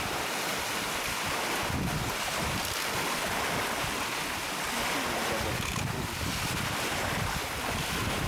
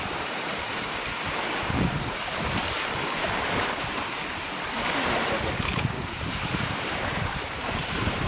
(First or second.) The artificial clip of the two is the second